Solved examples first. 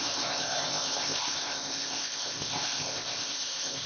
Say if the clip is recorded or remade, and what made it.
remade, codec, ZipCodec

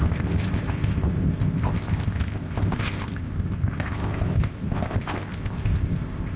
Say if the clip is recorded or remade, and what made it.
remade, codec, ZipCodec